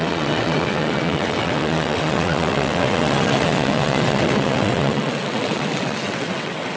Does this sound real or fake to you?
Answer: fake